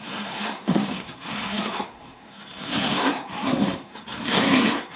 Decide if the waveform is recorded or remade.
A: remade